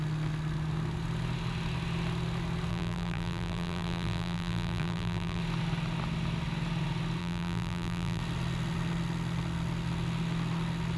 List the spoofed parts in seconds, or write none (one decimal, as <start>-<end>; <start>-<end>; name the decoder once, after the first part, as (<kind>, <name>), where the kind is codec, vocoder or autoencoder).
2.7-5.4 (vocoder, BigVGAN v2); 7.2-8.2